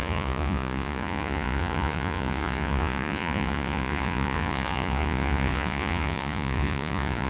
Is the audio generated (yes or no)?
yes